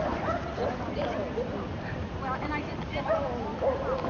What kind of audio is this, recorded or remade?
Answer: remade